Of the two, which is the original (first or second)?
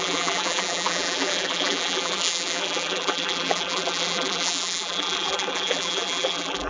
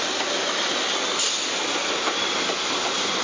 second